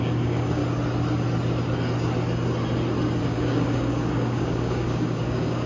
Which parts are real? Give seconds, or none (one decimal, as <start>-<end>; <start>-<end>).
0.6-3.2